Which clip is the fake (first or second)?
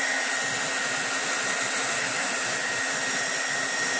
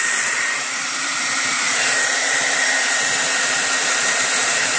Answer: second